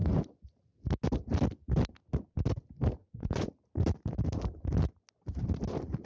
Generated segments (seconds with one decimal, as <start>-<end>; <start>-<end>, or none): 3.0-3.5